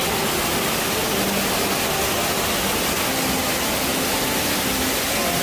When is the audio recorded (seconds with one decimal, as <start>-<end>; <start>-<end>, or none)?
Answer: 0.0-5.4